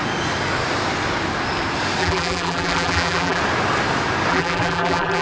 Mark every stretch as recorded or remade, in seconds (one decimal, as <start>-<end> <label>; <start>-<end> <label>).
0.0-2.0 recorded; 2.0-3.4 remade; 3.4-4.3 recorded; 4.3-5.2 remade